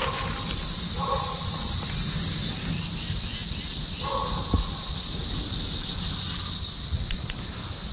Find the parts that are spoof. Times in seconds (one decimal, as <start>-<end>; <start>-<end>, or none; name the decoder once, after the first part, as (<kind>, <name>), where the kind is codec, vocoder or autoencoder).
none